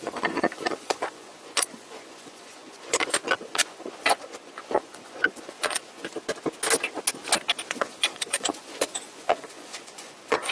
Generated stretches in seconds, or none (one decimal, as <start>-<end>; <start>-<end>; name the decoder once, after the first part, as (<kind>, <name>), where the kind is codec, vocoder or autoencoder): 0.0-6.1 (vocoder, Vocos); 7.7-10.5